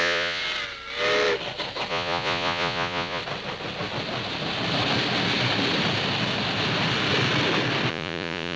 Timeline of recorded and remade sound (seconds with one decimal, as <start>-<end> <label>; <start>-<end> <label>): 0.0-0.4 remade; 0.4-1.9 recorded; 1.9-3.2 remade; 3.2-7.9 recorded; 7.9-8.6 remade